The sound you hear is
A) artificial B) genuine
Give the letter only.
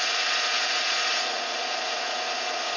A